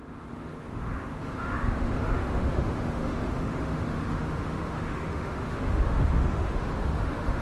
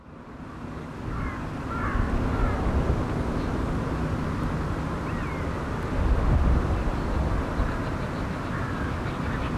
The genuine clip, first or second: second